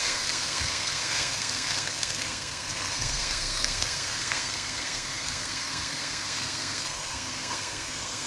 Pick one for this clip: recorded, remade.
remade